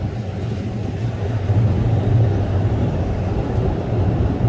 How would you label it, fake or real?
real